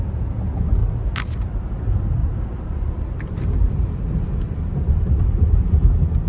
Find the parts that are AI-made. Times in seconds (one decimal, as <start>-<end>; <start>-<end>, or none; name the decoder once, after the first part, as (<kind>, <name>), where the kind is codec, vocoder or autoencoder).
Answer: 2.2-6.3 (vocoder, BigVGAN v2)